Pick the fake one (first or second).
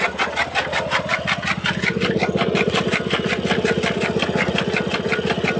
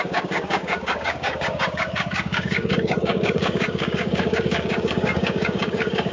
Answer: second